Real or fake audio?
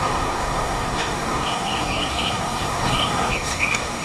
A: fake